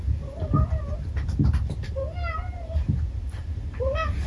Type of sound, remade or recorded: recorded